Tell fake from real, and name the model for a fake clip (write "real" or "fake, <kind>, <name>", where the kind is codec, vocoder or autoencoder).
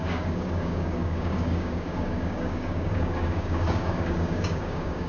fake, codec, DAC